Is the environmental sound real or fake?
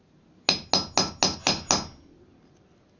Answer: real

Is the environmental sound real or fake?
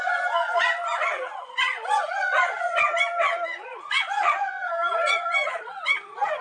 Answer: fake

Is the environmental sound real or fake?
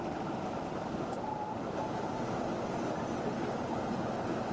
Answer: real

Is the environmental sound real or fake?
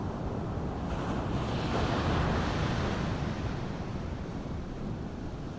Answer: real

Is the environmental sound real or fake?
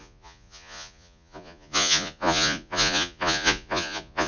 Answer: fake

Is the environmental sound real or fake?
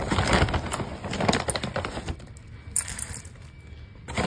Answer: real